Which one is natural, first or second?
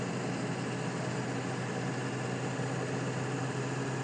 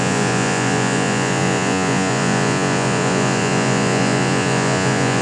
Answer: first